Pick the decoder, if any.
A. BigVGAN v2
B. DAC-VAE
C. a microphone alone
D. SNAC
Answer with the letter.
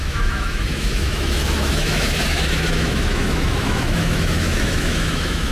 B